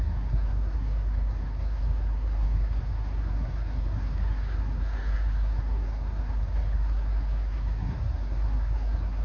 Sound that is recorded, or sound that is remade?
remade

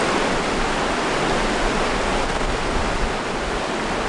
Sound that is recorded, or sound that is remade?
recorded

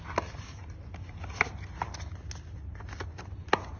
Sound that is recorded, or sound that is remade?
recorded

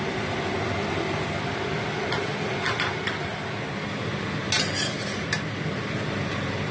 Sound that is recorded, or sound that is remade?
recorded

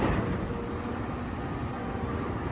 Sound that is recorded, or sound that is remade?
recorded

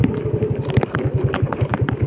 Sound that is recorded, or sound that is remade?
recorded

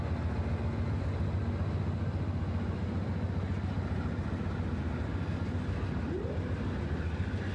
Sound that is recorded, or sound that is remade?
recorded